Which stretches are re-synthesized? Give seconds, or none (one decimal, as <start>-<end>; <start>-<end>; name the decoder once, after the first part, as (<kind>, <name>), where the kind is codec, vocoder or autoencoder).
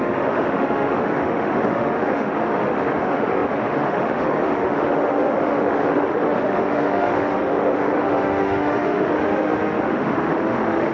0.0-10.9 (autoencoder, DAC-VAE)